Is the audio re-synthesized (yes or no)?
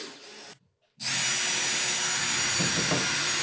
no